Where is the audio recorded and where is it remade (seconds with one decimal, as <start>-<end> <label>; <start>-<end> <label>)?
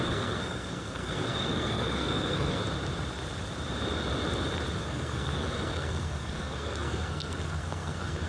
0.0-2.6 remade; 2.6-4.8 recorded; 4.8-8.3 remade